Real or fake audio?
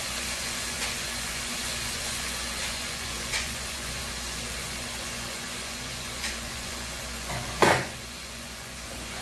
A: fake